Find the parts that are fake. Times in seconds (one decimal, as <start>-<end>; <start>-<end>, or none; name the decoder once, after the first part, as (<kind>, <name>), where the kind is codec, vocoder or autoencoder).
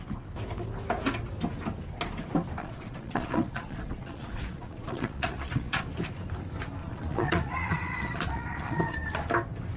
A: 2.6-5.8 (vocoder, Vocos); 6.8-9.2